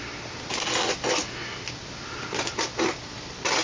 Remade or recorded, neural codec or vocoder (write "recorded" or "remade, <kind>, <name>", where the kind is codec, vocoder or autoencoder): recorded